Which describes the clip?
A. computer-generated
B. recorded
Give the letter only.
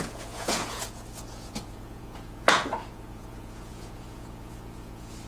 A